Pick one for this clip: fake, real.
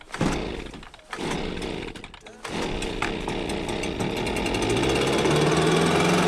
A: real